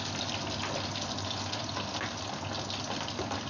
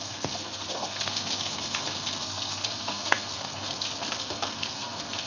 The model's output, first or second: second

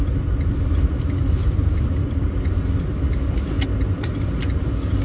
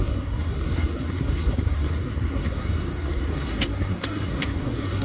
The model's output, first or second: second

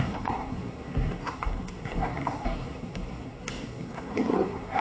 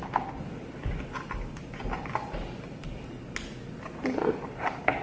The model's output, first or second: first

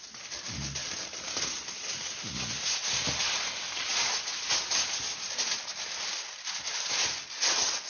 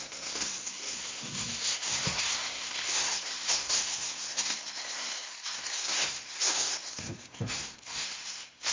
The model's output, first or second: second